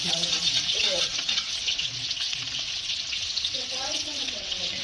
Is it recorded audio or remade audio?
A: remade